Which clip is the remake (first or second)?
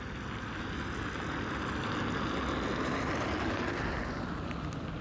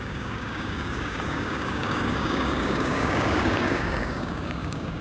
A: second